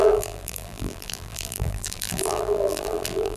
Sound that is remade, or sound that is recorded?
remade